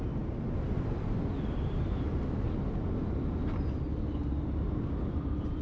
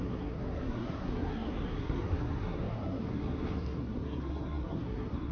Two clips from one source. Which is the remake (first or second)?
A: second